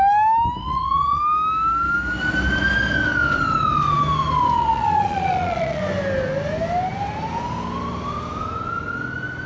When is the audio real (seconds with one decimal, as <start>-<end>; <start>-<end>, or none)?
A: 0.0-0.6; 1.2-4.6; 5.8-9.5